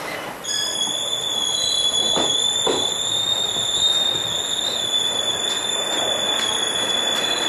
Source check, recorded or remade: recorded